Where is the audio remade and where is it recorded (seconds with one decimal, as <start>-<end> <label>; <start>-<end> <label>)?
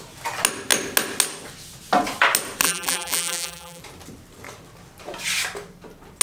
0.0-2.6 recorded; 2.6-3.8 remade; 3.8-6.2 recorded